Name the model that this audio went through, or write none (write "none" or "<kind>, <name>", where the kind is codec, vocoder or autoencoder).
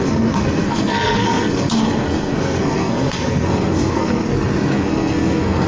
codec, SNAC